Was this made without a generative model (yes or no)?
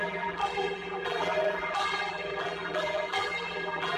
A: no